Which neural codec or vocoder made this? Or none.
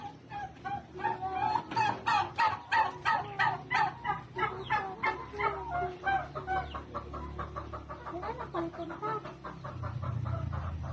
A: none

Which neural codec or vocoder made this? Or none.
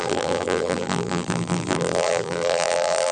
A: vocoder, BigVGAN v2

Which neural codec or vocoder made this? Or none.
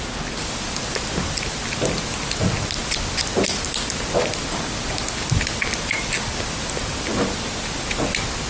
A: none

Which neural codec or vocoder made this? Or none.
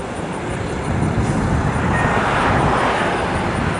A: none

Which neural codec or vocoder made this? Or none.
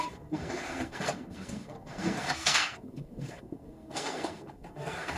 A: codec, SNAC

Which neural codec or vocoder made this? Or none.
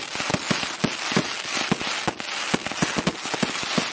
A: none